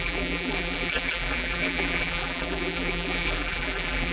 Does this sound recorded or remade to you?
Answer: remade